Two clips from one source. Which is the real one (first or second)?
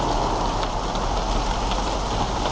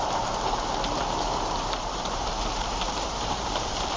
first